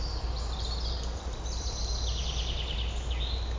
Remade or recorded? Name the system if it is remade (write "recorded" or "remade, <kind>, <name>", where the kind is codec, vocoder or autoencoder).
recorded